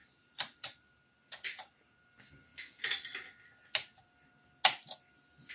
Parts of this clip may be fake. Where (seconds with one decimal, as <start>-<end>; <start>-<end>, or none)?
0.0-0.9